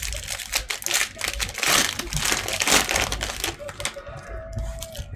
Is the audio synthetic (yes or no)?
no